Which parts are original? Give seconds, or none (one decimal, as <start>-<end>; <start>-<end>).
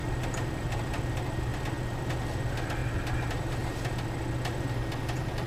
0.9-2.8; 3.5-5.5